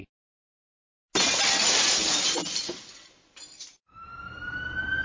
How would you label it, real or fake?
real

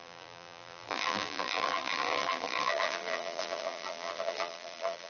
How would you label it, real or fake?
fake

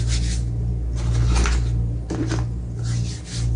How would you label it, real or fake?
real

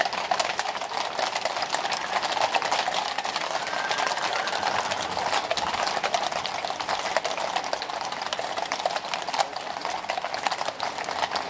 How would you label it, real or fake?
real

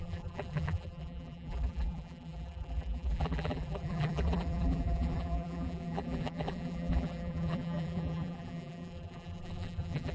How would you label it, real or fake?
fake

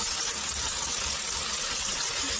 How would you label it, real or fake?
real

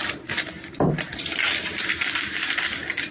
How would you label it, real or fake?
real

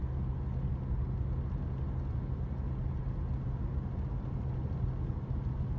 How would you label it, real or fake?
real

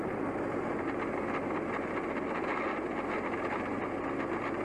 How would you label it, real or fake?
real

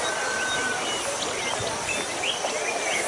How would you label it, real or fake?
real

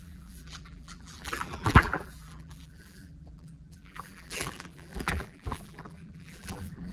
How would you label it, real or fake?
fake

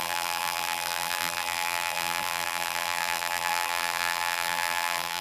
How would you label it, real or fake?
fake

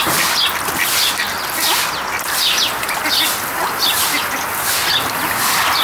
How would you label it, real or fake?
real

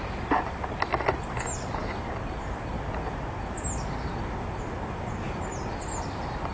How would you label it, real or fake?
real